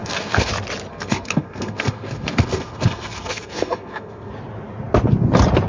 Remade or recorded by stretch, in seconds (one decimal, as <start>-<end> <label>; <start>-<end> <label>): 0.0-0.5 remade; 0.5-0.9 recorded; 0.9-4.3 remade; 4.3-5.7 recorded